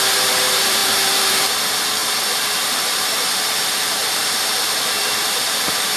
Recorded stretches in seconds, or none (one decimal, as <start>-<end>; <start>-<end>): none